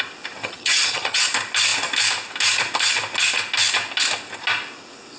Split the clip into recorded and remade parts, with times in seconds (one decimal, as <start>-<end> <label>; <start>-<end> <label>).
0.0-0.4 recorded; 0.4-1.2 remade; 1.2-5.2 recorded

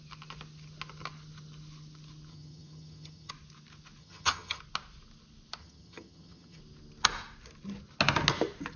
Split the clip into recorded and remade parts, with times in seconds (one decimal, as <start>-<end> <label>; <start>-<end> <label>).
0.0-2.3 recorded; 2.3-3.3 remade; 3.3-4.0 recorded; 4.0-4.6 remade; 4.6-5.6 recorded; 5.6-6.6 remade; 6.6-8.8 recorded

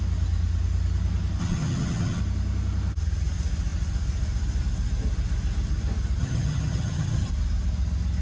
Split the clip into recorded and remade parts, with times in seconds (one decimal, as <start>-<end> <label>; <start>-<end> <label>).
0.0-1.4 recorded; 1.4-2.2 remade; 2.2-6.2 recorded; 6.2-7.3 remade; 7.3-8.2 recorded